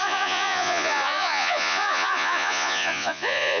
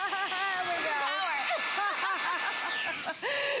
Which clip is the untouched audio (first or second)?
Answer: second